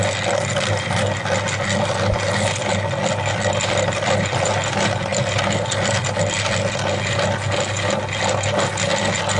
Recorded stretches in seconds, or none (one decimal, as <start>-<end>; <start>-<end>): 0.0-9.4